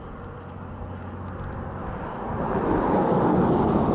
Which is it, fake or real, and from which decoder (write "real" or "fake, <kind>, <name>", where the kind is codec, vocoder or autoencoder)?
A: real